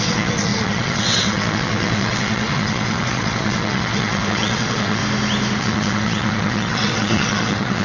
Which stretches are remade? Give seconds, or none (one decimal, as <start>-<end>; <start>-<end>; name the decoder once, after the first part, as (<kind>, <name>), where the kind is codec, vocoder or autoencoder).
0.0-5.0 (vocoder, WaveNeXt); 5.6-7.8